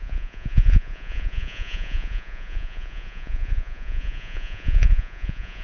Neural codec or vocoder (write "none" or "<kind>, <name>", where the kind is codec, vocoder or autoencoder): vocoder, Vocos